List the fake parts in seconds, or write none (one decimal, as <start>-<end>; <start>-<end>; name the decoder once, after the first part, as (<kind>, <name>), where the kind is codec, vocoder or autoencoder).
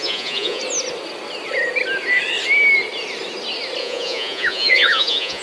0.0-0.6 (vocoder, Vocos); 3.8-5.4